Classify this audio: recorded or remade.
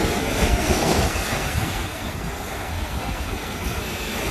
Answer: remade